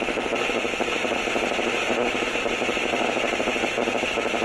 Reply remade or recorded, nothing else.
recorded